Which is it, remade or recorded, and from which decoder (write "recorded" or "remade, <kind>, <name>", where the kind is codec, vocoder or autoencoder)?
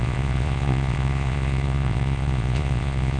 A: remade, vocoder, Vocos